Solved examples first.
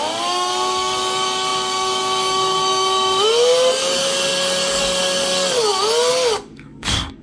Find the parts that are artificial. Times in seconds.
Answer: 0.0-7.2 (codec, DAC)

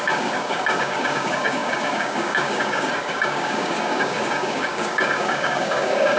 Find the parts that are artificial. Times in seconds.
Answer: 0.0-6.2 (codec, DAC)

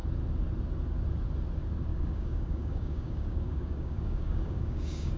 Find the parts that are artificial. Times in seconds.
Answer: 1.9-5.2 (codec, DAC)

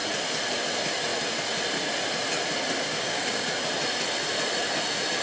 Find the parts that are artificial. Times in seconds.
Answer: 2.9-3.5 (codec, DAC)